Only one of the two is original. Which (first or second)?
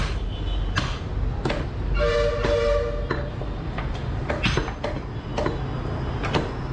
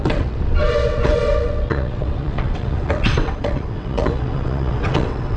first